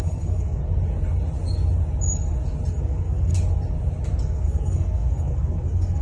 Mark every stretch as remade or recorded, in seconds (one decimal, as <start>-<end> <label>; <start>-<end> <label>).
0.0-0.6 remade; 0.6-2.7 recorded; 2.7-3.3 remade; 3.3-4.2 recorded; 4.2-6.0 remade